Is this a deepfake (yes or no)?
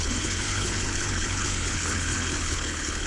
yes